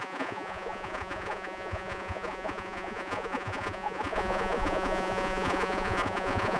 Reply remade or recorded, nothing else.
remade